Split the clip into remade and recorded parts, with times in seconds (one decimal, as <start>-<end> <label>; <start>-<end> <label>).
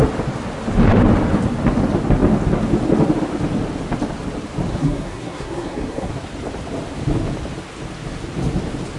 0.0-4.7 recorded; 4.7-6.1 remade; 6.1-9.0 recorded